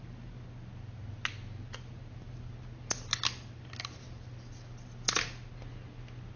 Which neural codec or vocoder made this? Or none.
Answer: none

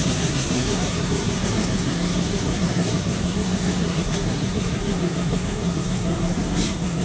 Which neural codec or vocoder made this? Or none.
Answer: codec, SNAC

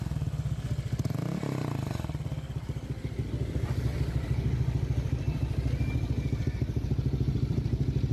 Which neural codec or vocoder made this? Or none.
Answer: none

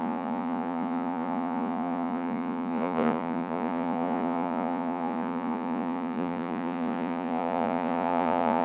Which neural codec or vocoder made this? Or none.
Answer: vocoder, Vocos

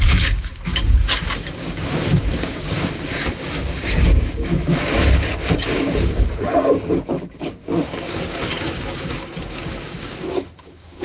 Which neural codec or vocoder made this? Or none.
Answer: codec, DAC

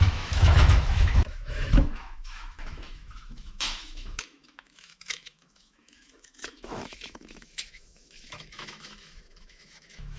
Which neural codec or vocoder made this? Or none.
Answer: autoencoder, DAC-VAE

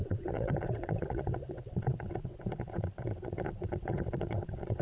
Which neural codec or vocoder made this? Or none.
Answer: vocoder, WaveNeXt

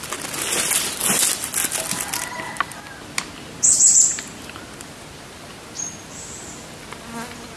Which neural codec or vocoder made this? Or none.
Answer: none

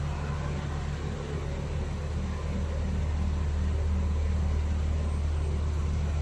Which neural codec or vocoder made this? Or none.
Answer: none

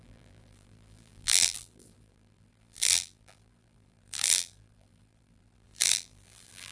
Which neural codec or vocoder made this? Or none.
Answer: vocoder, BigVGAN v2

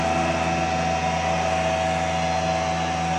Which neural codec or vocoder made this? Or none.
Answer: none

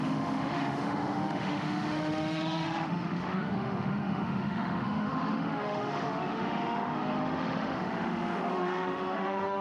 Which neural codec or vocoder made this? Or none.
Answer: autoencoder, DAC-VAE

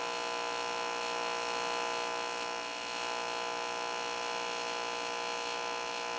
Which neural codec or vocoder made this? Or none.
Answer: none